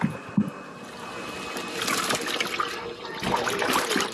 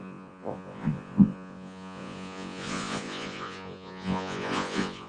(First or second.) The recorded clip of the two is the first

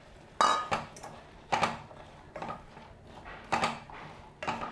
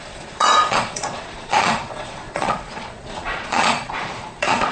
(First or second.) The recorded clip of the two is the first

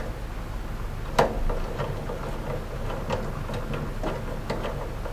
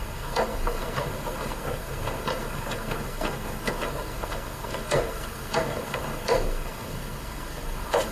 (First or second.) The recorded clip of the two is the first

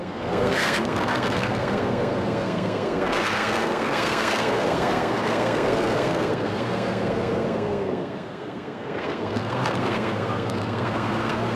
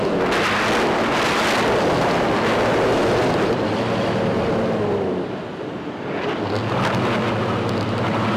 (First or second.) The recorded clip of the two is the second